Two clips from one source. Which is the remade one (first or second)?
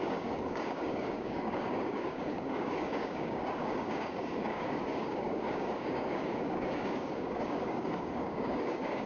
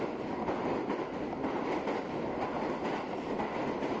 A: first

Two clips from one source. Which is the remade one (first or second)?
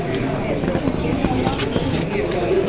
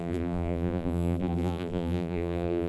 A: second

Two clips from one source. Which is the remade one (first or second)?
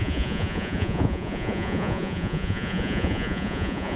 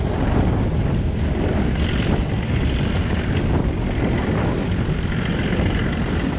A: first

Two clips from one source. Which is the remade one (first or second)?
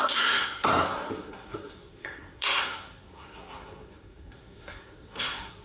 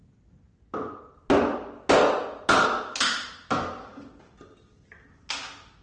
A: first